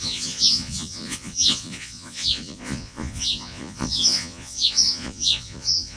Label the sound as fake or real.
fake